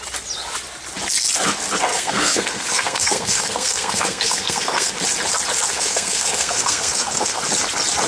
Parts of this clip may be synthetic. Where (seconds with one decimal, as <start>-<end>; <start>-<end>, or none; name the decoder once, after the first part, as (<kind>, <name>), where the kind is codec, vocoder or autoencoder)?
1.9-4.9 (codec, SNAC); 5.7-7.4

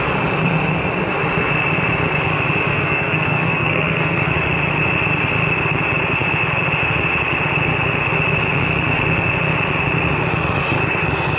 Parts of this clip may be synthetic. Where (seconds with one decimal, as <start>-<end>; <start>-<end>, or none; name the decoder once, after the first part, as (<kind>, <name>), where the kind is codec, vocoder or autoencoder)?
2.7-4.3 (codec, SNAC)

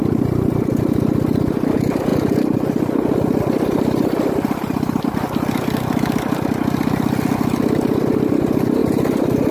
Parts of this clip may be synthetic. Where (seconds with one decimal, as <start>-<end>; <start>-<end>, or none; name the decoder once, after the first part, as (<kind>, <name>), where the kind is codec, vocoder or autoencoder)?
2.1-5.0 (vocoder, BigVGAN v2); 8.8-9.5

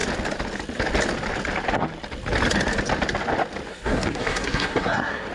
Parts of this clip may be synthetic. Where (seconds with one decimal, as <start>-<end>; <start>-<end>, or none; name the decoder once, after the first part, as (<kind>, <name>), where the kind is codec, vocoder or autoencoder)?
3.7-5.3 (codec, SNAC)

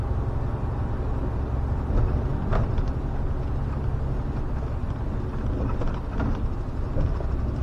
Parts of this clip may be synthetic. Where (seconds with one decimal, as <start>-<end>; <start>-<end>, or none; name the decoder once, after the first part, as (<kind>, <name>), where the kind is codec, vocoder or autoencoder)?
none

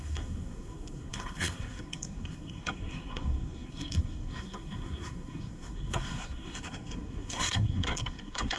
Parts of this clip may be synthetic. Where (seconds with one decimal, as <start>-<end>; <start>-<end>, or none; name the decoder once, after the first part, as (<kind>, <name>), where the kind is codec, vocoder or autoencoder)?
0.0-8.6 (codec, SNAC)

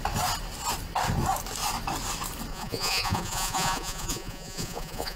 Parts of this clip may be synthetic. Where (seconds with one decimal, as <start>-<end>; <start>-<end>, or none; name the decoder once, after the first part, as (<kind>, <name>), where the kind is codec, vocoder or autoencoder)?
2.5-5.2 (vocoder, Vocos)

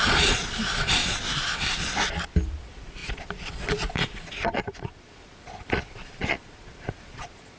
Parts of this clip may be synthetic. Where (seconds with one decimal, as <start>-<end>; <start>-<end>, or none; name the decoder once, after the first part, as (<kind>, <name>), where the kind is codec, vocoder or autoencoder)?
0.0-1.0 (vocoder, Vocos); 2.6-7.6